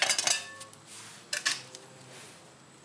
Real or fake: real